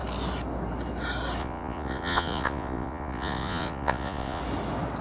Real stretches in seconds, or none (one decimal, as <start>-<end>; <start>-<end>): 0.0-1.4; 4.4-5.0